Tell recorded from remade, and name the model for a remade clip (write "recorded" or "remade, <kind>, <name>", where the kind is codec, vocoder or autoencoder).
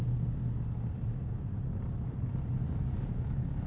recorded